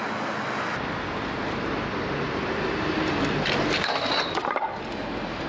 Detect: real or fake real